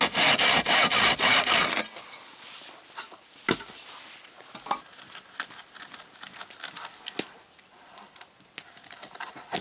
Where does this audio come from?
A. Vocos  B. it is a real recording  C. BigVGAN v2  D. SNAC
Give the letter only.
B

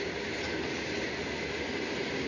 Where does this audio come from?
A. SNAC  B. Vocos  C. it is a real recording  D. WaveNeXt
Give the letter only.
C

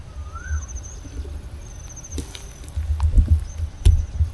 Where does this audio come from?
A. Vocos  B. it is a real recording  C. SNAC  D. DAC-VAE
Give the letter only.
B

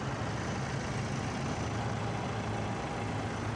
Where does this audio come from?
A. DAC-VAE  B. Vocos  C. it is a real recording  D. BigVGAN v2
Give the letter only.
C